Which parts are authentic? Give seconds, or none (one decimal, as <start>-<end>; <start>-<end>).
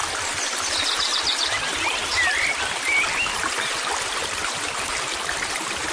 0.7-2.1